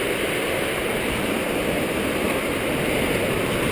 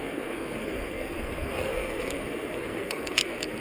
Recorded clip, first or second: first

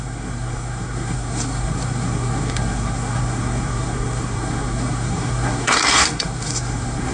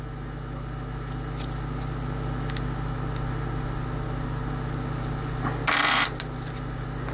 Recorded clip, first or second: second